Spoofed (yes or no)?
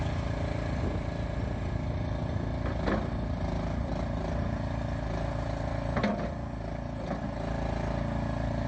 no